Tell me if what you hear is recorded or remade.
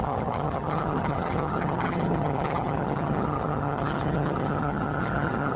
remade